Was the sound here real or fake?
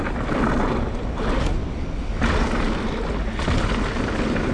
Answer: real